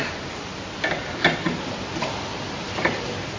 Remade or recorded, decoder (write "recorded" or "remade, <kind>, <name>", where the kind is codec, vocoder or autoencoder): remade, vocoder, BigVGAN v2